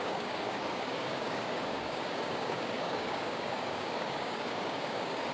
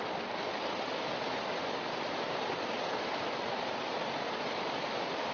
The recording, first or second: second